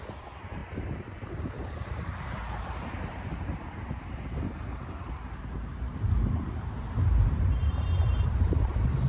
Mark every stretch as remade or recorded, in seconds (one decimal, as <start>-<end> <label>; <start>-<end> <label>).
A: 0.0-9.1 remade